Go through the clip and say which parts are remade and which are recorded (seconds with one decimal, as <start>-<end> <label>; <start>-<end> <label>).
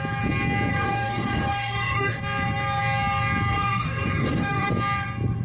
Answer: 0.0-0.7 recorded; 0.7-2.2 remade; 2.2-3.5 recorded; 3.5-4.7 remade; 4.7-5.4 recorded